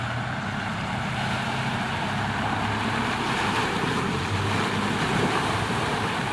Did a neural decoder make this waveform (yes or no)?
yes